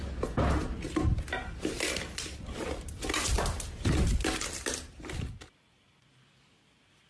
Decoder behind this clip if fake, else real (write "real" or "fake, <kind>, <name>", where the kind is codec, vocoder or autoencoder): real